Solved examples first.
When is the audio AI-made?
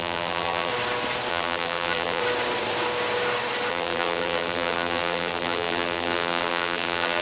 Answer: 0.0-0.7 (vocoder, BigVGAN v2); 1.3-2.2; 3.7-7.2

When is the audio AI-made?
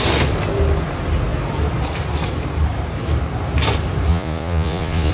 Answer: 4.1-5.1 (vocoder, Vocos)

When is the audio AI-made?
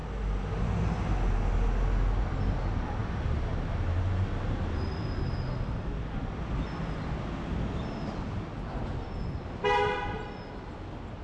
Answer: none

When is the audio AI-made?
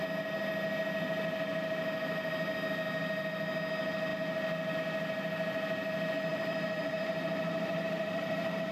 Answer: 6.3-8.7 (vocoder, BigVGAN v2)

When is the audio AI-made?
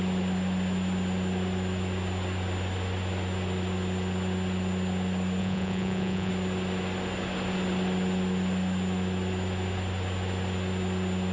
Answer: 5.4-6.3 (vocoder, Vocos)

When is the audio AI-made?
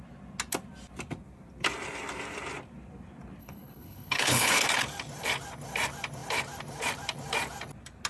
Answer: 3.4-4.6 (codec, HILCodec)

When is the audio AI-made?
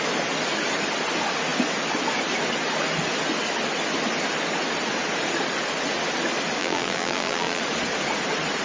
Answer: 6.6-7.6 (vocoder, BigVGAN v2)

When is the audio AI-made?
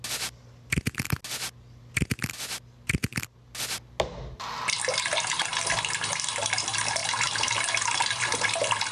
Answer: none